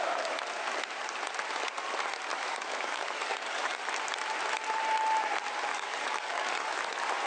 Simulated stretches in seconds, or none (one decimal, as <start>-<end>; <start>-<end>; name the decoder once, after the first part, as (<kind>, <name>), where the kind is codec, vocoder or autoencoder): 2.3-3.8 (codec, DAC); 5.7-6.8